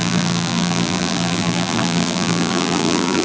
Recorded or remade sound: remade